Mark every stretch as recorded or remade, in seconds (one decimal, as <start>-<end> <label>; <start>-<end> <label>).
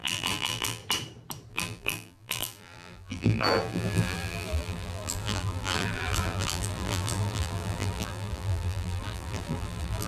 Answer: 0.0-0.8 remade; 0.8-1.5 recorded; 1.5-10.1 remade